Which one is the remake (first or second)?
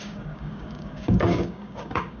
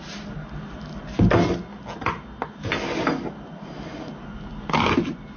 first